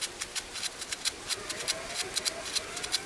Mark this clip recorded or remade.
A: recorded